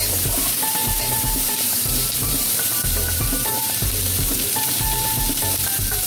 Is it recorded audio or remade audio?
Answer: remade